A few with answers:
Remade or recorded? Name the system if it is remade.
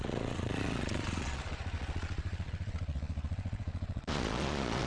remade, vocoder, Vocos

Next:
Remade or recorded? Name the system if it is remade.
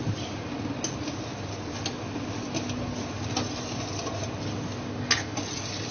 recorded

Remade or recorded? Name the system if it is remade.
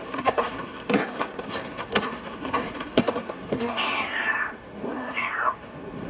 remade, codec, SNAC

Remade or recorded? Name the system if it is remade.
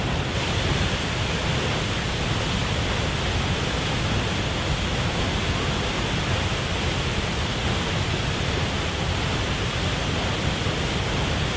recorded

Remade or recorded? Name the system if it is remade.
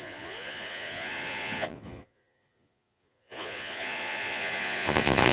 remade, vocoder, Vocos